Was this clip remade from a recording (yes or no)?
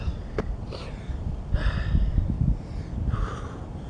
no